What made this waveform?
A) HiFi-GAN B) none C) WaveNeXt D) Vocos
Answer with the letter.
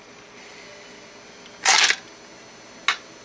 B